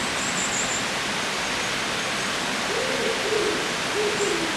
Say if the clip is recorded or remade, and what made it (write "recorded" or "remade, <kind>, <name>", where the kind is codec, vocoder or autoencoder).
recorded